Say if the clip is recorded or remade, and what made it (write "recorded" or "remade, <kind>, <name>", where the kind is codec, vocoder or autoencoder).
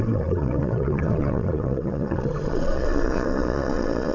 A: remade, vocoder, Vocos